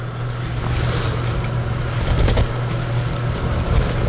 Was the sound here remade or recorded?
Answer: recorded